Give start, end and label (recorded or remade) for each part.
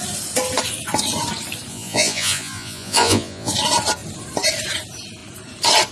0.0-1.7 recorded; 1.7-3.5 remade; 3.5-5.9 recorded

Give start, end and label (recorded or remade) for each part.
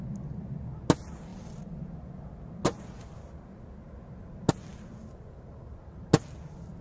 0.0-6.8 recorded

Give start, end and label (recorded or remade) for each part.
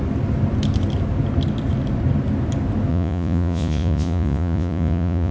0.0-2.9 recorded; 2.9-5.3 remade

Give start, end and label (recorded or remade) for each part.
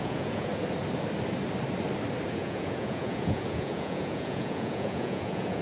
0.0-0.5 remade; 0.5-2.3 recorded; 2.3-5.6 remade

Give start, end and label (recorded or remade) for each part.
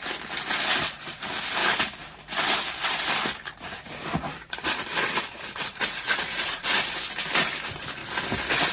0.0-4.3 recorded; 4.3-6.7 remade; 6.7-8.7 recorded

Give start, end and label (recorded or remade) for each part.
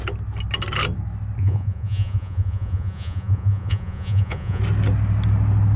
0.0-1.4 recorded; 1.4-4.6 remade; 4.6-5.8 recorded